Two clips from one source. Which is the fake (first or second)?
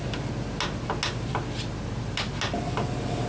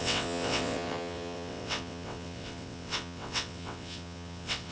second